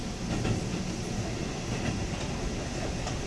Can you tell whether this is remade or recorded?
recorded